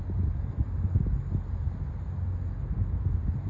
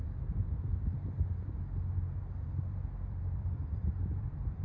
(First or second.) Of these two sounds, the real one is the first